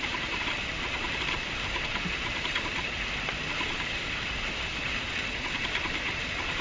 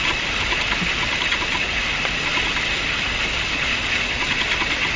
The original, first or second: second